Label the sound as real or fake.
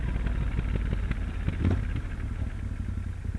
real